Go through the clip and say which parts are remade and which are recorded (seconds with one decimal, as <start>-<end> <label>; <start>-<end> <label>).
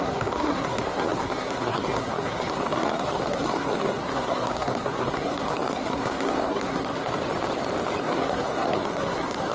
0.0-7.1 remade; 7.1-8.0 recorded; 8.0-9.5 remade